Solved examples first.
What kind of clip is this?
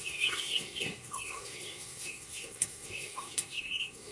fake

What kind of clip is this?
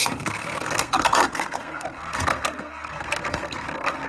fake